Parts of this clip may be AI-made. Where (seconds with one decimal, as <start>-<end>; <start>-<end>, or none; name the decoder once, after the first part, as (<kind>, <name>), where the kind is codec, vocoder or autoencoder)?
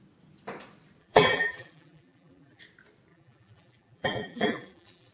1.0-2.6 (vocoder, BigVGAN v2); 3.1-5.1